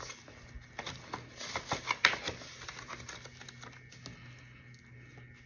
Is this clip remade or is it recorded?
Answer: recorded